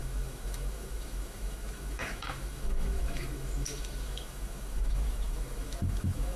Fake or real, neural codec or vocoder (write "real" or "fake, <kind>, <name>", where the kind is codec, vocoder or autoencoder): fake, autoencoder, DAC-VAE